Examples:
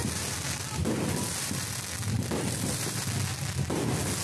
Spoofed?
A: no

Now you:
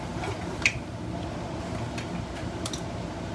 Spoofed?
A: no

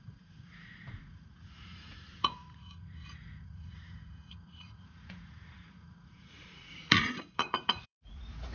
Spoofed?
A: yes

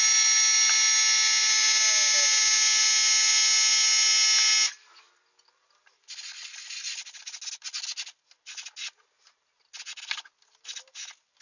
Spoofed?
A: no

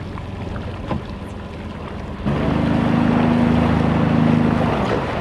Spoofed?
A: no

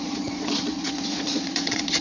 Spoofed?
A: yes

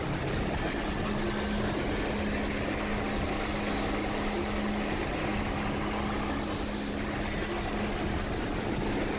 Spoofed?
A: no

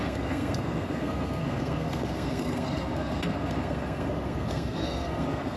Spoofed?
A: yes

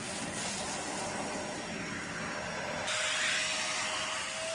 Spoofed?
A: no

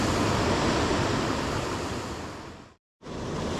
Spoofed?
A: no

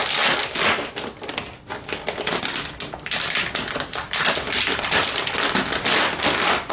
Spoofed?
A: no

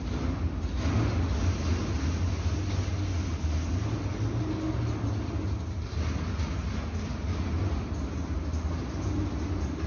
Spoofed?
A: no